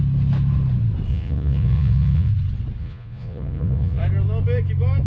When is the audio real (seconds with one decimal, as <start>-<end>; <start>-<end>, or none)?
0.0-1.1; 2.3-2.8; 4.0-5.1